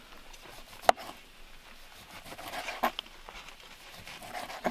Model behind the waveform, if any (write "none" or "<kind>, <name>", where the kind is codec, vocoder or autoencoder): none